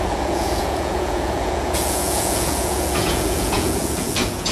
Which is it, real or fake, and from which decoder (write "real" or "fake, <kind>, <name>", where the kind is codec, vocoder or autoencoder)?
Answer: fake, vocoder, Vocos